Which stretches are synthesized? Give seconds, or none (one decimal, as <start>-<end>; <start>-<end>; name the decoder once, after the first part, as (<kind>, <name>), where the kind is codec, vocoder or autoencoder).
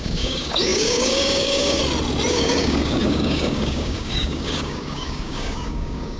0.0-1.8 (codec, DAC); 2.3-6.2